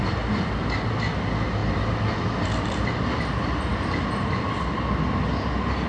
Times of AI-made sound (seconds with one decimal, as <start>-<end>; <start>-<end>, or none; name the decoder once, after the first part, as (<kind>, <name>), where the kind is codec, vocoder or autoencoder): none